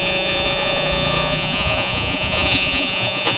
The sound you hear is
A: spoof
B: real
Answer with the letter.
A